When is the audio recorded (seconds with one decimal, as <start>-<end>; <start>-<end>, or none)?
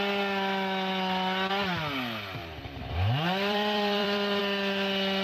0.0-2.4; 4.4-5.2